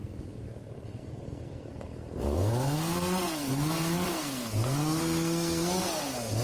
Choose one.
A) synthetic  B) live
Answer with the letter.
A